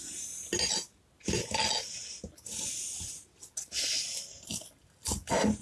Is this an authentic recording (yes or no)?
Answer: yes